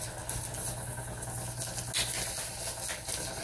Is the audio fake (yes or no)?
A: no